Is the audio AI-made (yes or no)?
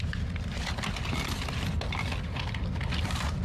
no